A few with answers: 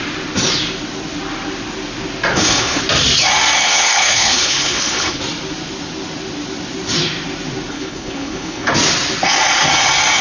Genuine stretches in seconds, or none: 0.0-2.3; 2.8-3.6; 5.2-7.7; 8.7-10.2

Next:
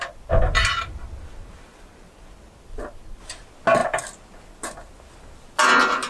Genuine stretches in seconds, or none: 0.0-6.1

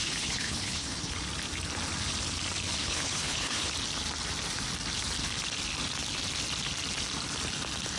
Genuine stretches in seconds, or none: 1.2-2.8; 3.7-8.0

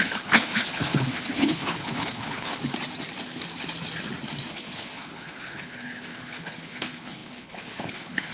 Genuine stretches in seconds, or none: 2.6-4.5

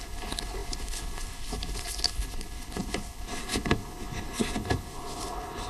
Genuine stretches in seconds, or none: none

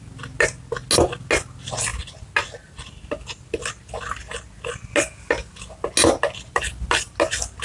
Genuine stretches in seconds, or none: 0.0-7.6

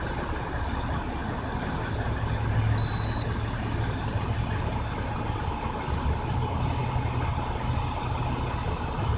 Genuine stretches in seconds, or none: 0.0-9.2